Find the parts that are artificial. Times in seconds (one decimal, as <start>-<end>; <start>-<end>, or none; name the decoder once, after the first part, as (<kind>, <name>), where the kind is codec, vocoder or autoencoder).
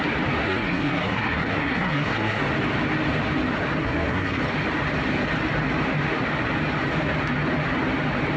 0.4-2.4 (codec, SNAC); 3.8-4.4